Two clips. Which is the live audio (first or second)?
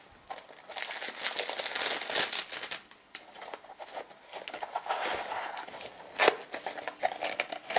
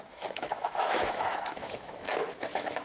first